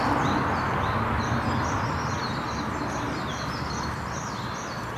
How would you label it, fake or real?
real